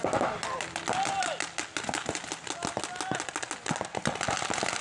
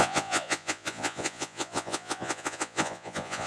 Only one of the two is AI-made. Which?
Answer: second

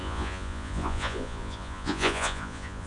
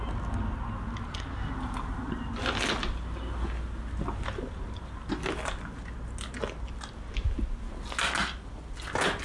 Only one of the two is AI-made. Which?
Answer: first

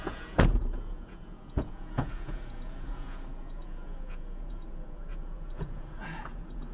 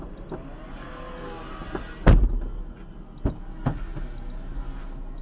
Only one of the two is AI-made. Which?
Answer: first